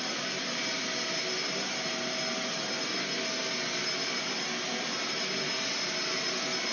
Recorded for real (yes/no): yes